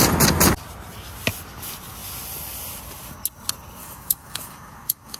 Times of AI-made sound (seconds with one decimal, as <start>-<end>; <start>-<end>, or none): 3.8-5.2